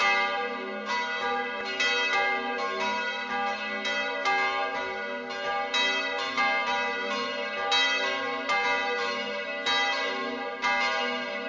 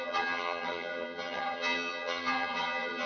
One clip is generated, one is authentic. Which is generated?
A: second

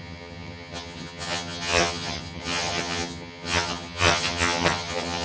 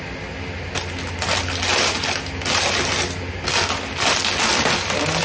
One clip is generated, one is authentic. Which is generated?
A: first